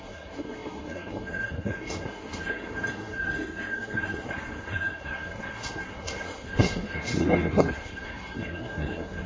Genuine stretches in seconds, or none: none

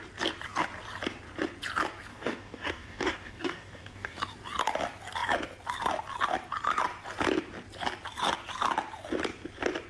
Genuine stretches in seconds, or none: 0.0-2.1; 4.2-9.9

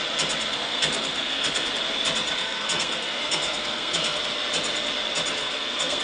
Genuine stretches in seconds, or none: 0.0-0.5; 1.7-2.4; 4.2-5.4

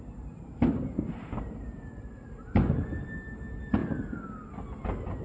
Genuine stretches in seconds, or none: 0.0-5.2

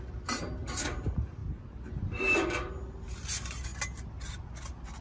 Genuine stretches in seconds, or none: 0.0-5.0

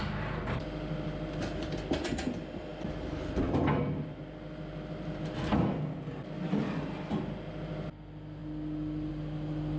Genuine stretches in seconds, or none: 0.0-9.8